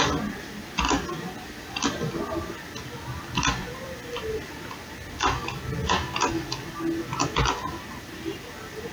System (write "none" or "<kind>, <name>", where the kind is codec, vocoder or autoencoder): none